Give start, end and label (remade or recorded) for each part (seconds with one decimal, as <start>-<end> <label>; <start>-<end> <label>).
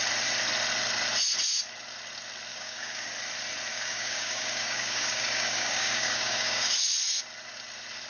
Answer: 0.0-2.5 recorded; 2.5-3.1 remade; 3.1-3.7 recorded; 3.7-6.7 remade; 6.7-8.1 recorded